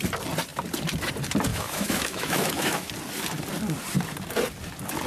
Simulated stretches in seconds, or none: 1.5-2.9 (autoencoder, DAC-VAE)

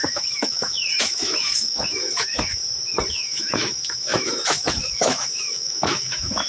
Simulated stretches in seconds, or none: 0.0-2.6 (autoencoder, DAC-VAE); 3.1-6.5

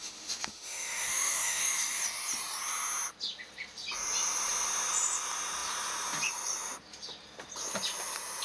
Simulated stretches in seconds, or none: 0.0-2.0 (autoencoder, DAC-VAE)

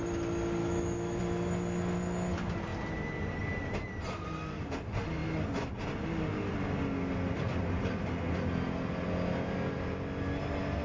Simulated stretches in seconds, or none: 0.6-1.2 (autoencoder, DAC-VAE)

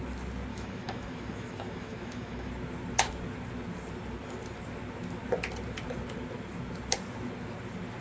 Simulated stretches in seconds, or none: 0.5-2.5 (autoencoder, DAC-VAE)

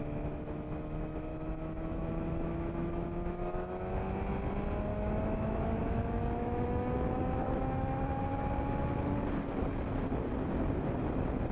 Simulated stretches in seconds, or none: 1.3-3.9 (autoencoder, DAC-VAE); 4.9-8.2

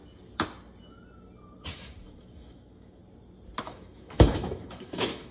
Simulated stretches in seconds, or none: 1.7-3.0 (autoencoder, DAC-VAE); 3.6-5.3